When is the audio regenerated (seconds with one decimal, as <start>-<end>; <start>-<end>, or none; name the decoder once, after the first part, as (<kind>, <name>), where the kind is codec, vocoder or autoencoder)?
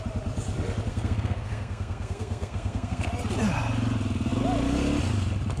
0.9-3.1 (codec, SNAC)